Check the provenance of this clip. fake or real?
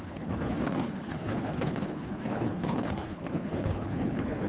fake